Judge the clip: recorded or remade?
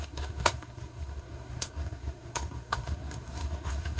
remade